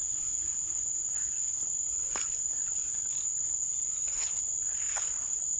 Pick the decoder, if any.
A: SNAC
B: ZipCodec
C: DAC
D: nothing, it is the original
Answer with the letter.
D